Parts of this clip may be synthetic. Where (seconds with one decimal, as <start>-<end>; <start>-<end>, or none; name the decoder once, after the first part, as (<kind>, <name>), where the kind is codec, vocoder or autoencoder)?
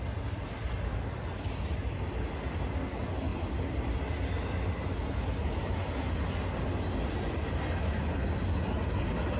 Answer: 3.3-4.3 (vocoder, BigVGAN v2)